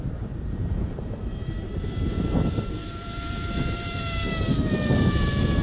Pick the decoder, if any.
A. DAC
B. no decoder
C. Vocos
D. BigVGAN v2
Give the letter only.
D